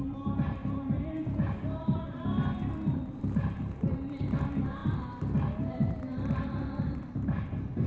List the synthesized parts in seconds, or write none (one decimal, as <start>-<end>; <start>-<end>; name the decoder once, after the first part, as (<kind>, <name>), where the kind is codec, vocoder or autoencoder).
none